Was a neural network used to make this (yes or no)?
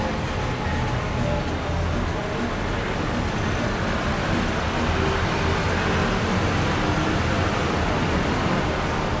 no